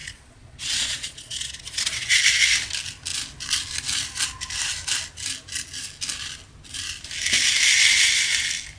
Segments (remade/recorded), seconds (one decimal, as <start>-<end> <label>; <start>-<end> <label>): 0.0-2.2 remade; 2.2-8.8 recorded